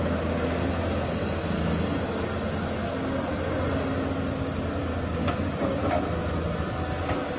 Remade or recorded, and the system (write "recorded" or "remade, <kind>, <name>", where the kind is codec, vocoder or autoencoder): recorded